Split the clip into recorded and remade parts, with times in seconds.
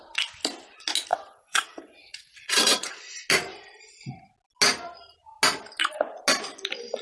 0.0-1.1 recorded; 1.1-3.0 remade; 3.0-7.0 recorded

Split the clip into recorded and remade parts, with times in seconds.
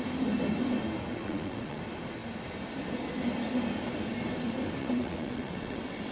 0.0-1.2 recorded; 1.2-1.8 remade; 1.8-4.8 recorded; 4.8-6.1 remade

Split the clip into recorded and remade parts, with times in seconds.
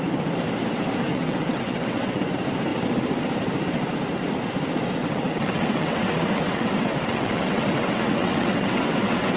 0.0-1.1 recorded; 1.1-2.2 remade; 2.2-5.0 recorded; 5.0-9.4 remade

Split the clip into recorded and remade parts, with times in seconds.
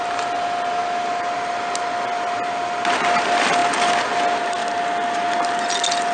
0.0-6.1 recorded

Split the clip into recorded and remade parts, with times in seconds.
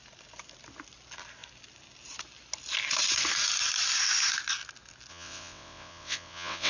0.0-5.1 recorded; 5.1-6.7 remade